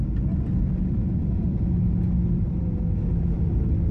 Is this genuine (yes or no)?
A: yes